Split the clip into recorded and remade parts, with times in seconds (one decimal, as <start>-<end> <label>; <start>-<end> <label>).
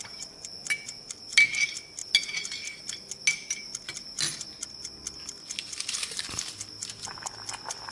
0.0-7.9 recorded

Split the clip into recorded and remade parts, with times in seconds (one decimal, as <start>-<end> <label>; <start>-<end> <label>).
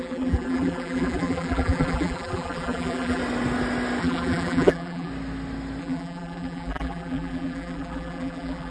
0.0-3.2 remade; 3.2-4.0 recorded; 4.0-5.1 remade; 5.1-5.8 recorded; 5.8-8.7 remade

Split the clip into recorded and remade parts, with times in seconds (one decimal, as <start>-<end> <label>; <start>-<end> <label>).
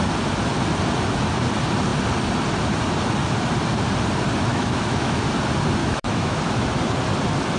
0.0-4.5 recorded; 4.5-5.2 remade; 5.2-5.8 recorded; 5.8-6.4 remade; 6.4-7.6 recorded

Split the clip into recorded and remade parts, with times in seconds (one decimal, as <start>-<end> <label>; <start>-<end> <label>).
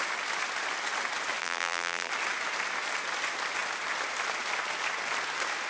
0.0-1.4 recorded; 1.4-2.1 remade; 2.1-5.7 recorded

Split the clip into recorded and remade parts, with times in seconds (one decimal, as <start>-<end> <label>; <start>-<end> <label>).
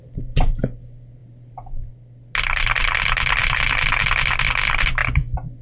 0.0-0.6 remade; 0.6-1.2 recorded; 1.2-1.9 remade; 1.9-5.6 recorded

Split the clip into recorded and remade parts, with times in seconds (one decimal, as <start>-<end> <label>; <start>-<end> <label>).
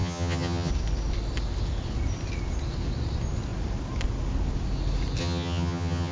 0.0-0.7 remade; 0.7-5.2 recorded; 5.2-6.1 remade